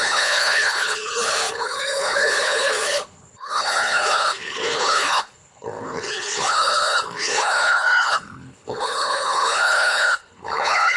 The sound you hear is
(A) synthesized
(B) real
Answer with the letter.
A